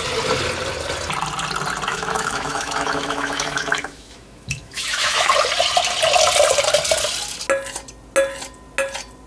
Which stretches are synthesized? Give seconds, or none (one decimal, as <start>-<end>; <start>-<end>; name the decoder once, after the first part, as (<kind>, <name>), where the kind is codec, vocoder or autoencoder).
1.9-5.3 (autoencoder, DAC-VAE)